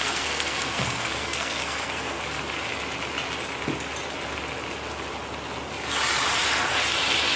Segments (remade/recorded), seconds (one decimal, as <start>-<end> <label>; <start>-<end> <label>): 0.0-2.2 remade; 2.2-7.4 recorded